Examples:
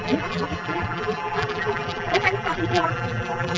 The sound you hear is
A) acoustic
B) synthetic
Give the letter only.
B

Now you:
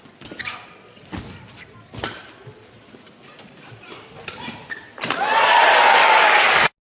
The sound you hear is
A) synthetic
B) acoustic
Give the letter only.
B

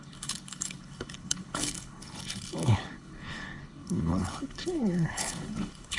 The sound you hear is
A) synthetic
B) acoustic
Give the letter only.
A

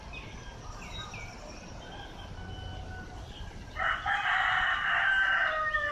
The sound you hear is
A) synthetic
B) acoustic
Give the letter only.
B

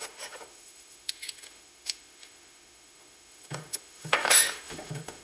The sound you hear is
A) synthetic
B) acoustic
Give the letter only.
A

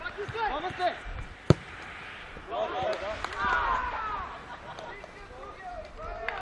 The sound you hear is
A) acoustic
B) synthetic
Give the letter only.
A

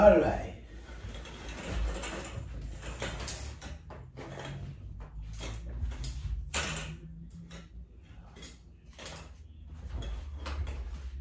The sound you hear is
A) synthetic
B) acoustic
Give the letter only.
B